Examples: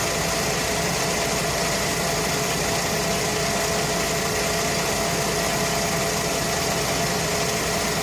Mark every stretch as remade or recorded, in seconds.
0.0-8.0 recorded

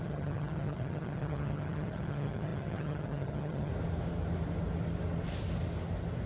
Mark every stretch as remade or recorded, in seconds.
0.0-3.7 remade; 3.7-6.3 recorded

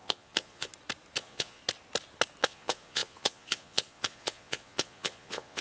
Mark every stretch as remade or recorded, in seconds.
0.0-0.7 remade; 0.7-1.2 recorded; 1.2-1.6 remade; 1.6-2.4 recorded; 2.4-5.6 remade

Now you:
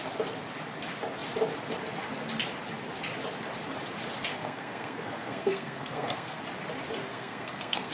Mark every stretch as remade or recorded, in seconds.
0.0-4.3 recorded; 4.3-6.4 remade; 6.4-7.1 recorded; 7.1-7.9 remade

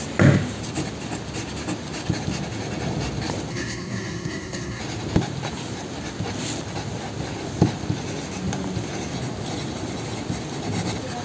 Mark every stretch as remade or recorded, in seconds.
0.0-3.5 recorded; 3.5-4.8 remade; 4.8-11.2 recorded